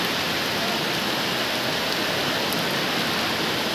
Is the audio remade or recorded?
recorded